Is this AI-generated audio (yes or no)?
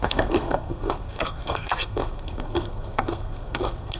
yes